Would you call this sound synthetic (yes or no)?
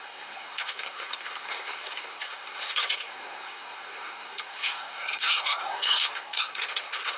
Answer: yes